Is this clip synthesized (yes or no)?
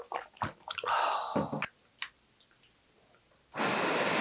no